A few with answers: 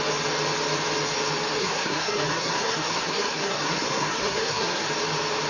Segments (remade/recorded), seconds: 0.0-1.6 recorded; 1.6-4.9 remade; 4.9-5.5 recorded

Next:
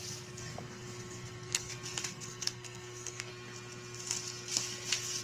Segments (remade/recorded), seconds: 0.0-0.5 recorded; 0.5-1.7 remade; 1.7-2.1 recorded; 2.1-3.3 remade; 3.3-5.2 recorded

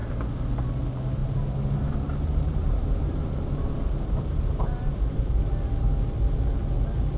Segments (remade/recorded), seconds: 0.0-1.2 recorded; 1.2-5.5 remade; 5.5-7.2 recorded

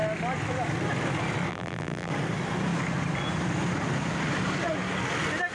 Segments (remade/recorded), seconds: 0.0-1.5 recorded; 1.5-2.1 remade; 2.1-5.5 recorded

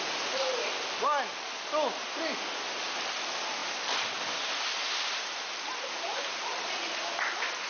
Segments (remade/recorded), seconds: 0.0-7.7 recorded

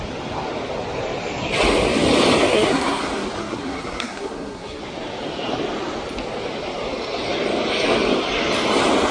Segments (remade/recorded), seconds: 0.0-2.5 recorded; 2.5-3.0 remade; 3.0-3.4 recorded; 3.4-4.8 remade; 4.8-9.1 recorded